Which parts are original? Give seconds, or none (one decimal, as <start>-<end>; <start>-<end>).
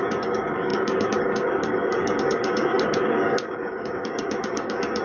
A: none